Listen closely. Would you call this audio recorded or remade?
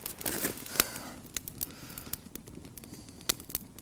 recorded